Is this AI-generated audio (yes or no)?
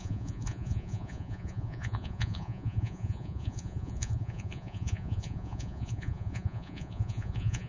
yes